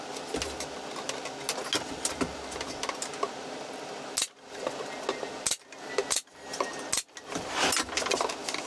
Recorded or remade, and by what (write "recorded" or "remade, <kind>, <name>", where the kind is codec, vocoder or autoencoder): recorded